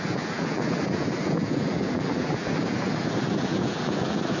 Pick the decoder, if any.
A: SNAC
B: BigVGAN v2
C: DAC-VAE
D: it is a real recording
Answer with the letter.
B